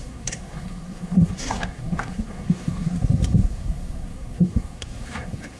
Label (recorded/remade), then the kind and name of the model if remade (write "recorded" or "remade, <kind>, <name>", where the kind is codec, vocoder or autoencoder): remade, codec, SNAC